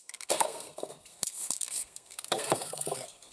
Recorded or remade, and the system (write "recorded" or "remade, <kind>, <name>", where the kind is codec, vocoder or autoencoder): remade, codec, SNAC